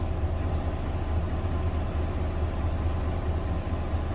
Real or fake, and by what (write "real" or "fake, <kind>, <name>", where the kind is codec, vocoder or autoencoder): real